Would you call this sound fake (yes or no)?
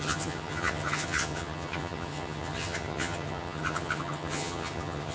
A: yes